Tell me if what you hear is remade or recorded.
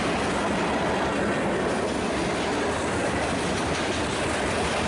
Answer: recorded